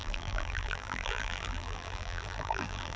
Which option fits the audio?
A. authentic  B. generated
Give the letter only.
B